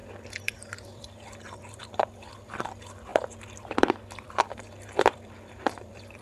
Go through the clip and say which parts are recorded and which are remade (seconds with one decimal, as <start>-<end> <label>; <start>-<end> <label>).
0.0-6.2 remade